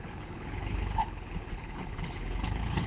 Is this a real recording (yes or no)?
no